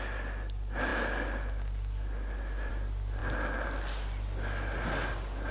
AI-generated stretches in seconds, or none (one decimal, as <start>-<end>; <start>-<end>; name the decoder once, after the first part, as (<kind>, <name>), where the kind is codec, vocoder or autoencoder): none